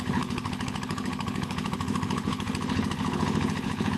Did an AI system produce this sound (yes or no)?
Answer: yes